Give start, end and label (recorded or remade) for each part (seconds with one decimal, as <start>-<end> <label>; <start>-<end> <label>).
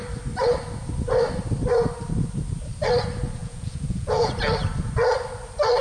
0.0-3.4 recorded; 3.4-4.3 remade; 4.3-5.8 recorded